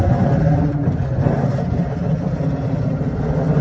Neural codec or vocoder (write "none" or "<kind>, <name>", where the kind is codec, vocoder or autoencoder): none